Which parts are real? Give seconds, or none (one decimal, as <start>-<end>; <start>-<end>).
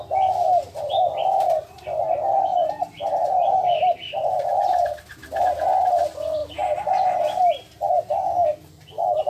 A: 0.0-9.3